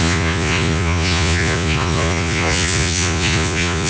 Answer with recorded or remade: remade